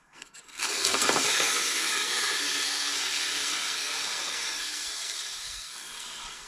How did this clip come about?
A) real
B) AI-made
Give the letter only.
B